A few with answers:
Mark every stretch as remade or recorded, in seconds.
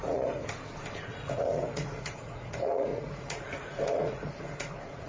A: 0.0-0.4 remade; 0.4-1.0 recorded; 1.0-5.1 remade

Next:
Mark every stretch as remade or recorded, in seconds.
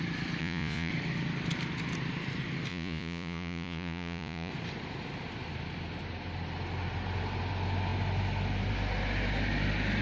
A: 0.0-0.4 recorded; 0.4-0.9 remade; 0.9-2.7 recorded; 2.7-4.5 remade; 4.5-10.0 recorded